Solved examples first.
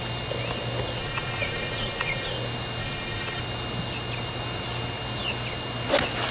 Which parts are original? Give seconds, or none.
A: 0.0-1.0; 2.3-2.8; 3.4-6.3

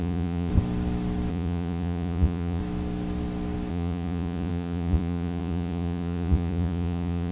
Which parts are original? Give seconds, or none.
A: 0.5-1.3; 2.6-3.7

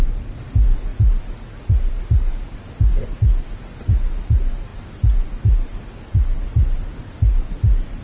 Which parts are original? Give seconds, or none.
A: 0.0-8.0

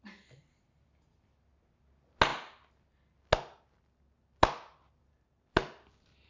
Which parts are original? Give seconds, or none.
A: 0.0-6.3